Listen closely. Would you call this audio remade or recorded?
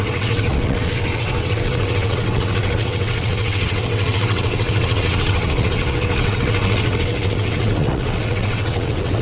remade